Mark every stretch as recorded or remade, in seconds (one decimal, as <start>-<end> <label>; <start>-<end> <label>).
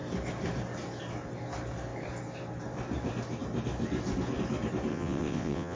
0.0-4.9 recorded; 4.9-5.8 remade